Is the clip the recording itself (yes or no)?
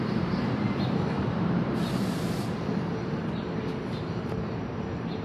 no